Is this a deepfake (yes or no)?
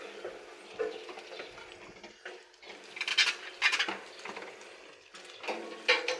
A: no